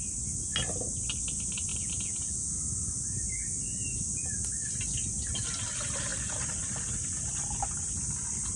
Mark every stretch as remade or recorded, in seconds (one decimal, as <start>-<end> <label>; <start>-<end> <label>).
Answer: 0.0-1.7 recorded; 1.7-2.6 remade; 2.6-8.6 recorded